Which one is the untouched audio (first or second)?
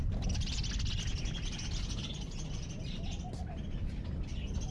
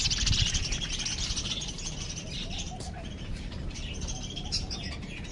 first